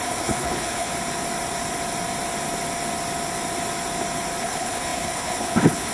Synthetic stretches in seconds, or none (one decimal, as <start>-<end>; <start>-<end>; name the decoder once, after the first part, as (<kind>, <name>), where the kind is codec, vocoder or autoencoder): 0.0-0.9 (codec, HILCodec); 4.4-5.9